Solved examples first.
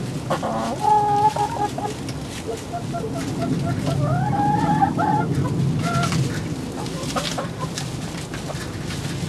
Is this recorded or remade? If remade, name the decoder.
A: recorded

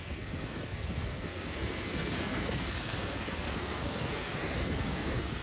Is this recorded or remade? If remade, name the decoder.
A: remade, codec, SNAC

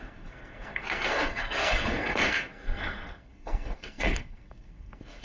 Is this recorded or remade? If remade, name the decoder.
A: remade, codec, SNAC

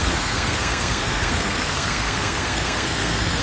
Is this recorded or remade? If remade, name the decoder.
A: remade, codec, SNAC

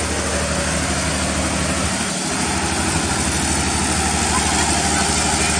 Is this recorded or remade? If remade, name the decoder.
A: recorded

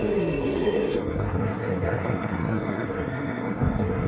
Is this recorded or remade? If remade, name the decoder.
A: remade, codec, SNAC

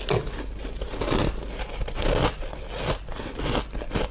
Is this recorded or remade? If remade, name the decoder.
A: recorded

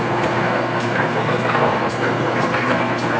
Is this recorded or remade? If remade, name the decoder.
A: remade, codec, SNAC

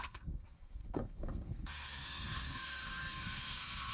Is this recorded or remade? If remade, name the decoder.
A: remade, codec, SNAC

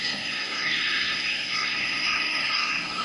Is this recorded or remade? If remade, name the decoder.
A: remade, codec, SNAC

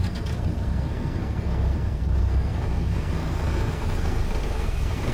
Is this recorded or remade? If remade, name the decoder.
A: remade, codec, SNAC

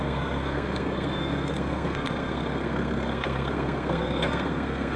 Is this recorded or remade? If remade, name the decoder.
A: remade, codec, SNAC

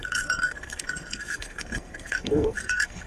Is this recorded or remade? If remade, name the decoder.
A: remade, codec, SNAC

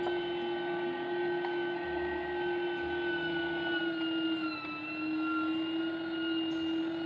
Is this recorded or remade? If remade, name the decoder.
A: recorded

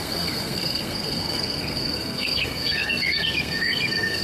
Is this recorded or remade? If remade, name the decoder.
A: remade, codec, SNAC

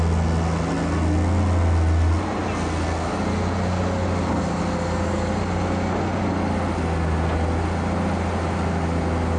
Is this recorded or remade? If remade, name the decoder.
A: recorded